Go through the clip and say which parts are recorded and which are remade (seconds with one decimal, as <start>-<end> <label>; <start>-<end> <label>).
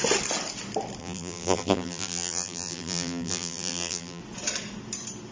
0.0-1.0 recorded; 1.0-4.2 remade; 4.2-5.3 recorded